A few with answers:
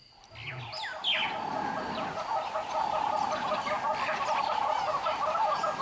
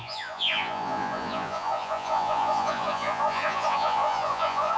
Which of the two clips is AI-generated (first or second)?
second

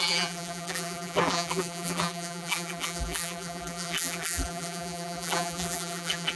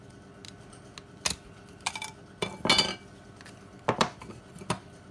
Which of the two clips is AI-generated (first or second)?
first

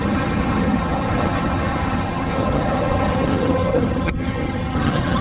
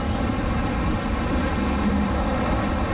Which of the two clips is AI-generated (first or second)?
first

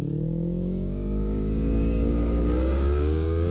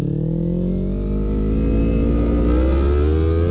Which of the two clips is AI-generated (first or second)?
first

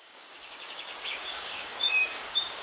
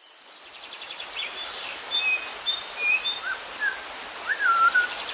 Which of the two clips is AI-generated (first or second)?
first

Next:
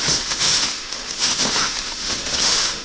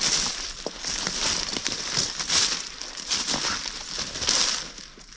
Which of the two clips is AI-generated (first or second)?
first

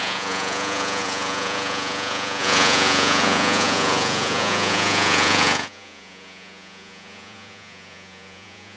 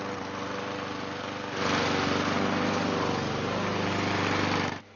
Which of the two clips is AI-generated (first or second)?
first